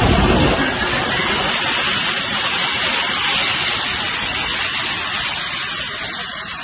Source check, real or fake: real